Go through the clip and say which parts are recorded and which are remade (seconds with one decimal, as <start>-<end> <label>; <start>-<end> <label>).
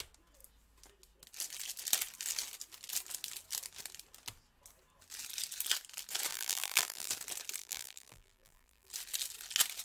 0.0-6.3 recorded; 6.3-7.1 remade; 7.1-7.6 recorded; 7.6-8.9 remade; 8.9-9.8 recorded